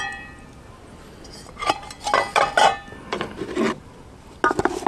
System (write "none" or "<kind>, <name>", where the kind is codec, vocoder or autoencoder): none